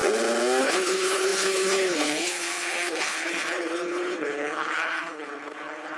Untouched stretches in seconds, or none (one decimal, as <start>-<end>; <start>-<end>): 0.0-0.6

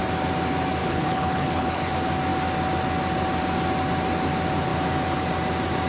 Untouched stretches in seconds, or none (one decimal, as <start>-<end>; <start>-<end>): 0.0-0.8; 1.9-5.9

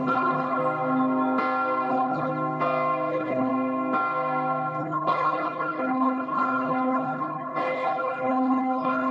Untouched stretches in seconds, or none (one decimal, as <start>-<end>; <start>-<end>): 0.6-1.9; 2.3-3.1; 3.5-4.8

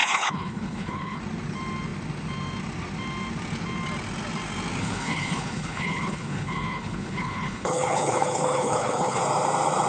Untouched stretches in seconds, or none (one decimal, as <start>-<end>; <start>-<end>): 1.2-4.8; 9.2-9.9

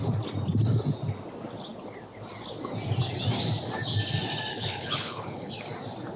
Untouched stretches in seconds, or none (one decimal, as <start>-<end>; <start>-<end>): 0.0-4.5; 5.5-6.2